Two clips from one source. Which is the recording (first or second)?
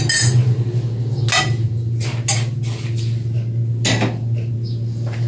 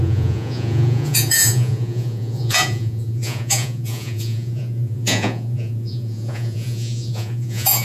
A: first